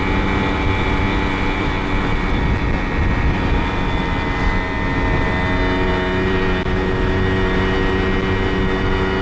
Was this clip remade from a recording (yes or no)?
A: no